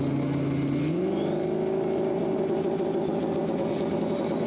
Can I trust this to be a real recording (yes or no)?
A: yes